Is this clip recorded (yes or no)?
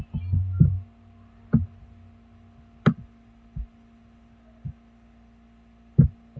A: yes